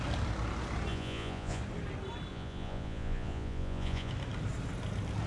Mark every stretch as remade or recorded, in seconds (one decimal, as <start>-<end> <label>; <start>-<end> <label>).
0.0-0.9 recorded; 0.9-1.6 remade; 1.6-2.3 recorded; 2.3-4.1 remade; 4.1-5.3 recorded